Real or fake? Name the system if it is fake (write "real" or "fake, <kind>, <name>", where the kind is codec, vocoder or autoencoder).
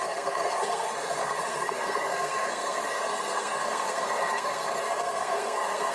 fake, codec, SNAC